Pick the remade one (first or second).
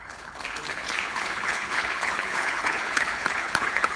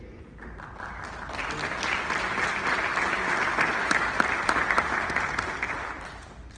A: first